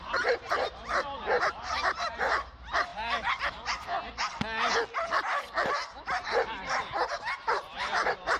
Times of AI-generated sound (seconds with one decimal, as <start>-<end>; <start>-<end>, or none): 0.0-3.9; 5.7-8.4